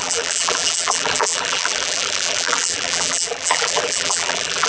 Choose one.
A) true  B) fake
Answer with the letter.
B